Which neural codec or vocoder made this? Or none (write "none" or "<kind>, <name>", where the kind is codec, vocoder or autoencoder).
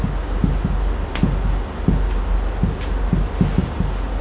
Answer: none